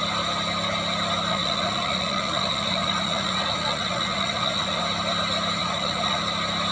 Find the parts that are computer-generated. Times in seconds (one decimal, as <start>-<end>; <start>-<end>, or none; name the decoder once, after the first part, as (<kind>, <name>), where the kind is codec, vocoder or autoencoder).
1.3-4.8 (vocoder, Vocos); 5.6-6.2